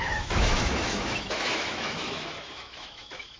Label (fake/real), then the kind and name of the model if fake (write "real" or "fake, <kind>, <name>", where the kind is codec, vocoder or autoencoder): fake, autoencoder, DAC-VAE